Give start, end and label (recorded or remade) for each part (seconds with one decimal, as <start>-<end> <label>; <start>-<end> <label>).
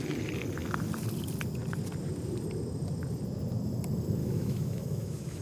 0.0-4.2 recorded; 4.2-5.4 remade